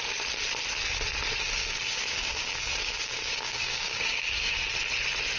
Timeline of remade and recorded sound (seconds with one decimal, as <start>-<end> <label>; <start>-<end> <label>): 0.0-1.6 recorded; 1.6-4.5 remade; 4.5-5.4 recorded